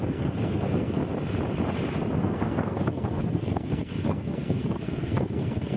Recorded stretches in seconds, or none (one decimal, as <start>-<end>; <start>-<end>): 1.0-2.2